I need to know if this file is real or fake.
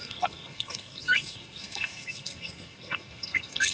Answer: fake